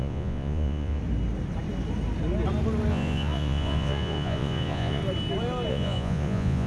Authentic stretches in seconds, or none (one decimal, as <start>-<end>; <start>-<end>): 1.0-2.9; 5.0-5.7